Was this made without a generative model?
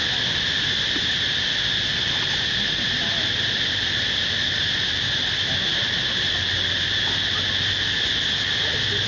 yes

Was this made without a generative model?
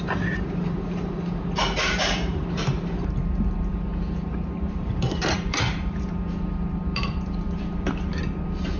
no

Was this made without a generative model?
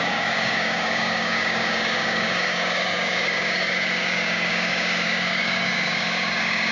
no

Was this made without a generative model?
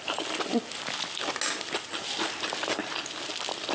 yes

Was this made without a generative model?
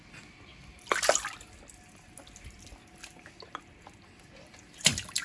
yes